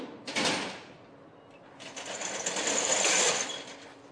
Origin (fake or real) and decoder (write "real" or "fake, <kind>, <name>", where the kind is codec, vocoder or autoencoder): real